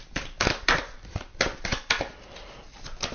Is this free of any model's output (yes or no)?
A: no